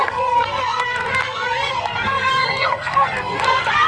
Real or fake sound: fake